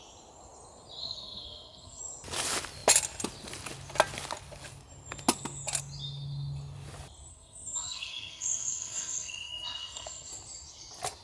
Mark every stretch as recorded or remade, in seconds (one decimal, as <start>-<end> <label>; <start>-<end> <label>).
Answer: 0.0-1.0 recorded; 1.0-2.0 remade; 2.0-7.3 recorded; 7.3-10.3 remade; 10.3-11.2 recorded